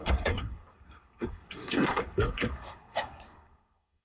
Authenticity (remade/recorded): remade